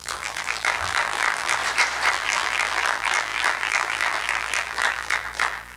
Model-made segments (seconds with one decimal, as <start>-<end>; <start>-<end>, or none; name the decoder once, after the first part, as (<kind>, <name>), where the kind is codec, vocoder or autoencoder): 0.0-1.6 (vocoder, BigVGAN v2); 2.1-5.8